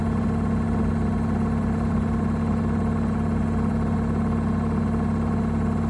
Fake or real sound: real